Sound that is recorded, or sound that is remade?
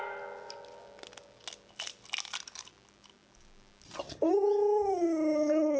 recorded